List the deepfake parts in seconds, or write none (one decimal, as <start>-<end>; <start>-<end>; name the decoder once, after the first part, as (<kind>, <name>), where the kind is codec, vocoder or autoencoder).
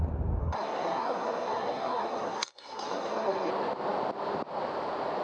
0.4-3.5 (codec, SNAC)